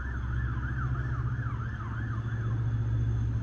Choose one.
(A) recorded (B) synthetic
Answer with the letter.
A